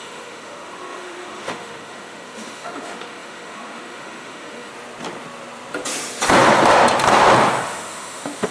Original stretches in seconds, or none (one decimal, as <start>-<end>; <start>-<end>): 4.7-7.6